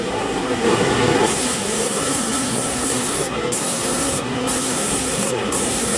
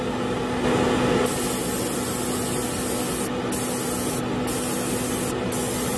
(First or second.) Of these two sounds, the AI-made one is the first